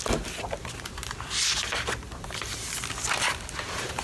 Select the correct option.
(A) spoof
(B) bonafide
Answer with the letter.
B